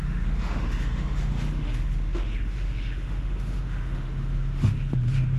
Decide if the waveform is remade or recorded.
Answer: remade